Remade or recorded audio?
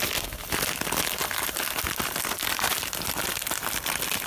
recorded